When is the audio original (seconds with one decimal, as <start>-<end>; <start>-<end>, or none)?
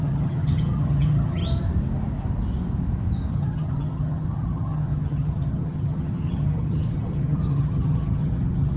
1.4-3.3